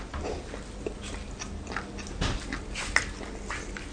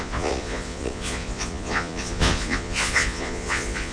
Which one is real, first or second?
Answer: first